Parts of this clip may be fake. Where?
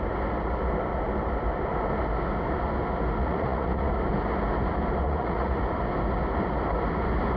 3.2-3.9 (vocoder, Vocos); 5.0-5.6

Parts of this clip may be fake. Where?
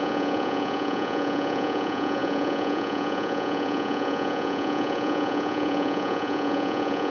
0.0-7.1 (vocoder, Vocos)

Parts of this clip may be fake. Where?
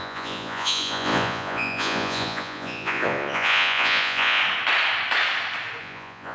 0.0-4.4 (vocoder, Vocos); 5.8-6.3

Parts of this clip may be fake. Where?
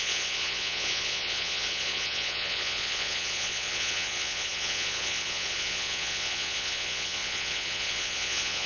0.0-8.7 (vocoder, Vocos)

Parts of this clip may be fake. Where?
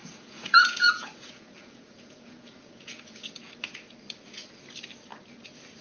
0.0-3.5 (vocoder, Vocos)